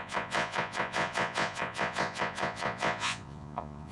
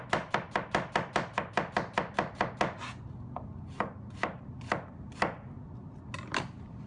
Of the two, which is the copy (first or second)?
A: first